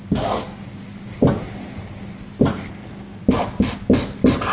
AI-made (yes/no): no